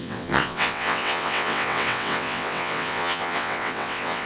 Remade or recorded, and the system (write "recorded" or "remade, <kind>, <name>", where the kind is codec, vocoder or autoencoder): remade, vocoder, WaveNeXt